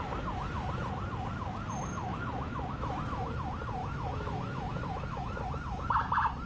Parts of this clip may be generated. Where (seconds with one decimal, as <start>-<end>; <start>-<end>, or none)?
2.1-3.3; 3.8-5.4